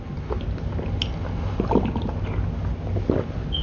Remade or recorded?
recorded